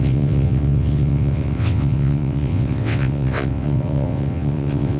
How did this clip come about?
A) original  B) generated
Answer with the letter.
B